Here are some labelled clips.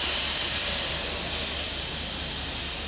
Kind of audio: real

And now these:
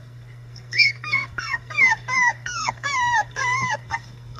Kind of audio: fake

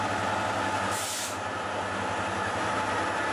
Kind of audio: real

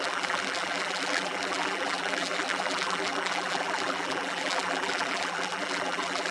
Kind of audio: fake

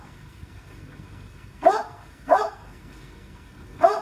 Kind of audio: fake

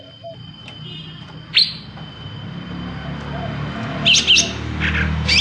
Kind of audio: real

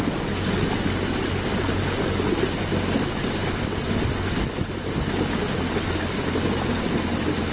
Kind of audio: real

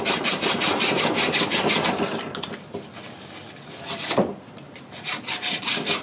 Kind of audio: real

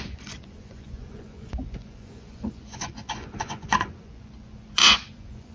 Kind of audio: fake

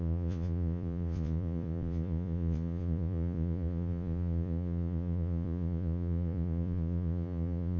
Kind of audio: fake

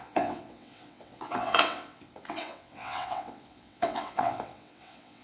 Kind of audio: fake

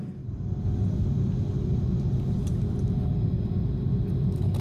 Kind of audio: real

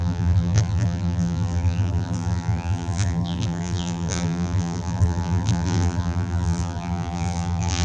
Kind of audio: fake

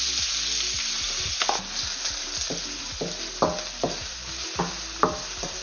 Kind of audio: real